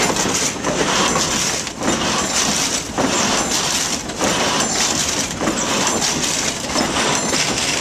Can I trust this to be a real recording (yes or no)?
no